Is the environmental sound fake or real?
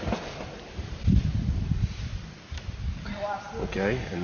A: real